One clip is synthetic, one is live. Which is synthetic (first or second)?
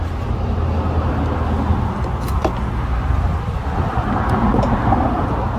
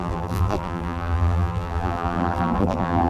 second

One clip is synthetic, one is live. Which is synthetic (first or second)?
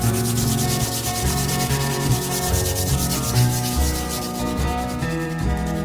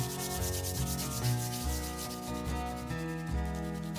first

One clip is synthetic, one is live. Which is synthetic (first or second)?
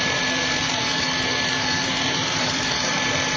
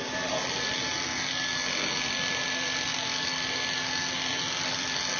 first